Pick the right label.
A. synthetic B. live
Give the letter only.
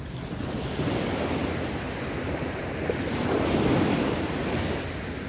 B